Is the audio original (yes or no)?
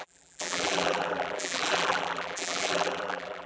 no